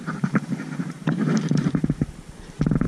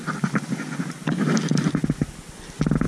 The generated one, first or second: first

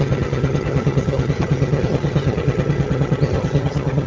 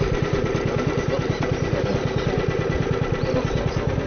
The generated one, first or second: first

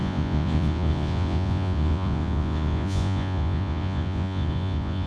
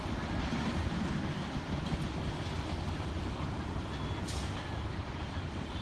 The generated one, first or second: first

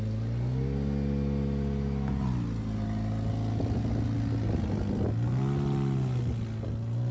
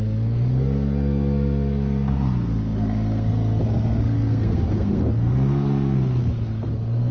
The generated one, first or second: second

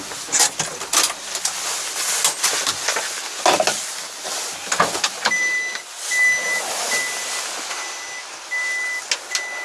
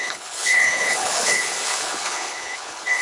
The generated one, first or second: second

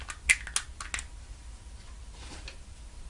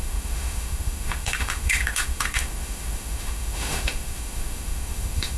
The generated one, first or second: second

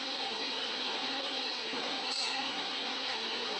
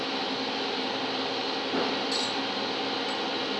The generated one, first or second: first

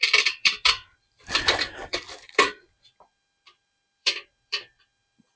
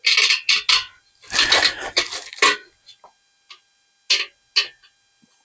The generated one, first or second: first